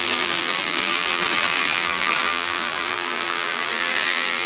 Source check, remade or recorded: remade